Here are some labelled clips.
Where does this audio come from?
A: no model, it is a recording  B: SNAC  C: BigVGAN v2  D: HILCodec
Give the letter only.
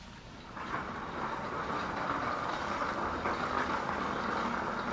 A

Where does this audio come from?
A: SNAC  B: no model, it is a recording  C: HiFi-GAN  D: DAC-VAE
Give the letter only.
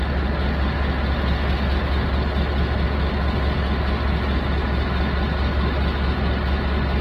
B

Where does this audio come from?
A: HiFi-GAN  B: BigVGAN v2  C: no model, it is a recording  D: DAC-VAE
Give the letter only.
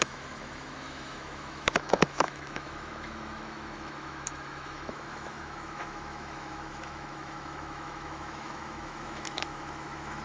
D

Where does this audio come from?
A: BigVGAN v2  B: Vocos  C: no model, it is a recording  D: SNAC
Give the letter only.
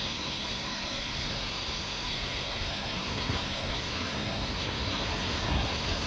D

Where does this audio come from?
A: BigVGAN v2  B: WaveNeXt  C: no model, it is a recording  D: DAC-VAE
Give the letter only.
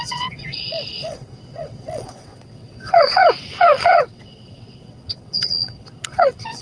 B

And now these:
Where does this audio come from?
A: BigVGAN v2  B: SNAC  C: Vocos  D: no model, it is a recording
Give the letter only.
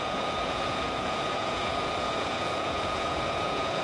C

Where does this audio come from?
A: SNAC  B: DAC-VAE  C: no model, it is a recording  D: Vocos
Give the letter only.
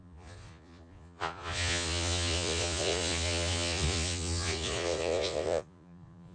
D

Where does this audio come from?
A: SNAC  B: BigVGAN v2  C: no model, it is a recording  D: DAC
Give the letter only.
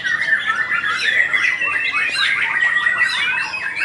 C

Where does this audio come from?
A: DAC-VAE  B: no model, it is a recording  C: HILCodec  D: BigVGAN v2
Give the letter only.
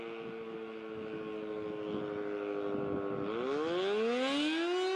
B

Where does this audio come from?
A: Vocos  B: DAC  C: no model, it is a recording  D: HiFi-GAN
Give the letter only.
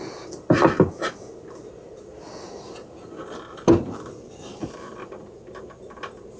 C